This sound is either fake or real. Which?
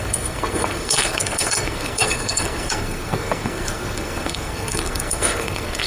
fake